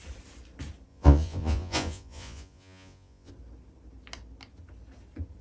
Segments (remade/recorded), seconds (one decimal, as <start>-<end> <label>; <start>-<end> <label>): 0.0-0.9 recorded; 0.9-3.3 remade; 3.3-5.4 recorded